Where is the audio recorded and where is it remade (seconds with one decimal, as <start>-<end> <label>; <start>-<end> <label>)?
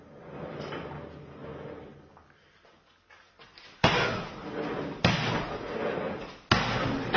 0.0-7.2 recorded